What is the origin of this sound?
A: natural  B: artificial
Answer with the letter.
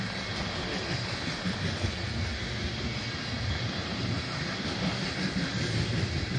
A